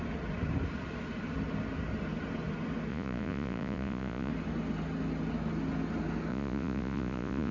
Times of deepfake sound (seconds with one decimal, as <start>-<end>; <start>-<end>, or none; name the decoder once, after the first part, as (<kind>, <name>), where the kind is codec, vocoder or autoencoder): 2.9-4.3 (vocoder, Vocos); 6.3-7.5